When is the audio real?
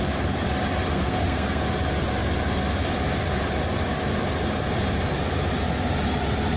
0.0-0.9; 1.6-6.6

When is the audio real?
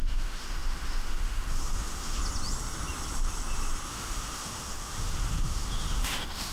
2.2-3.9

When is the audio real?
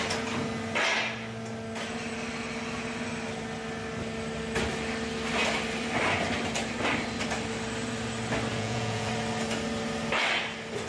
0.0-8.5; 9.1-10.9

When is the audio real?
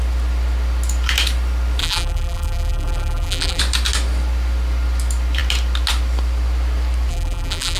0.0-1.8; 3.6-7.1